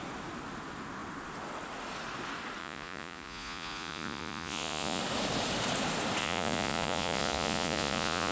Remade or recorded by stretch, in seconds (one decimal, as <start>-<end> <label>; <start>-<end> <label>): 0.0-2.6 recorded; 2.6-5.0 remade; 5.0-6.2 recorded; 6.2-8.3 remade